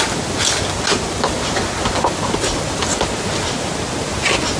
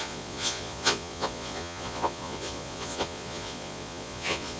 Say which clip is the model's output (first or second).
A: second